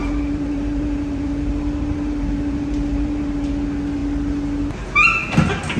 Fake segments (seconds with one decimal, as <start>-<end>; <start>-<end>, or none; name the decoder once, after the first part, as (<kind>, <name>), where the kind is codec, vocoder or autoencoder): 0.0-3.5 (vocoder, BigVGAN v2)